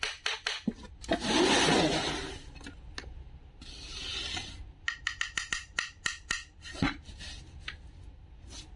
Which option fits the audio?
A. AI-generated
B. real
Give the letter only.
B